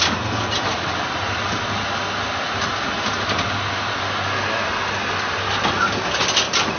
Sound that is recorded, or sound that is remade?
recorded